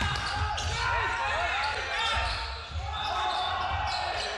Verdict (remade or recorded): recorded